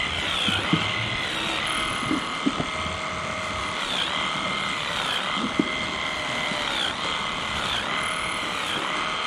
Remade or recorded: recorded